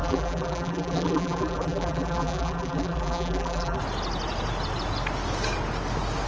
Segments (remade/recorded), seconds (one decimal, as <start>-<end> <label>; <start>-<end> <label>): 0.0-3.8 remade; 3.8-6.3 recorded